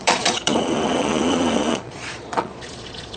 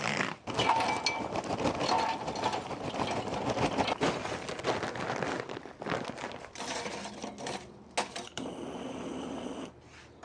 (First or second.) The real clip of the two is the second